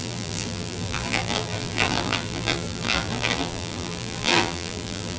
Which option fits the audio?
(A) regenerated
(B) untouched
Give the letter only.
A